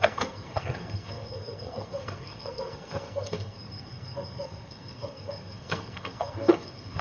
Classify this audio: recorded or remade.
remade